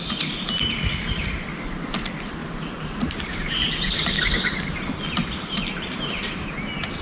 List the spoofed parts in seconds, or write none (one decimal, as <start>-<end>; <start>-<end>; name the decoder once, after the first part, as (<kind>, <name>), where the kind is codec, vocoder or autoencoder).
2.4-4.2 (vocoder, BigVGAN v2); 5.2-6.2